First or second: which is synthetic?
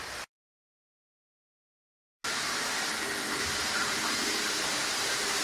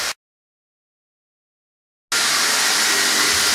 first